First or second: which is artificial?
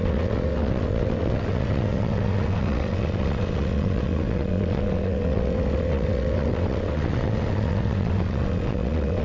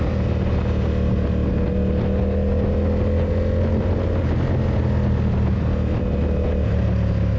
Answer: first